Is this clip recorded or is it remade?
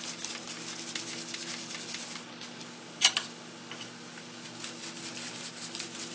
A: recorded